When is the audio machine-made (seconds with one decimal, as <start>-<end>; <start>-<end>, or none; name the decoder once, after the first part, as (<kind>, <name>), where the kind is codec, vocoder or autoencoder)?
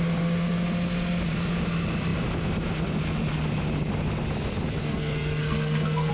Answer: 4.8-6.1 (codec, SNAC)